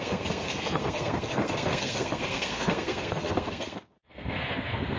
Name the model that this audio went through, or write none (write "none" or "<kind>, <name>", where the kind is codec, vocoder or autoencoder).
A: codec, SNAC